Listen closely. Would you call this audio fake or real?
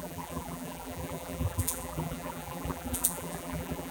fake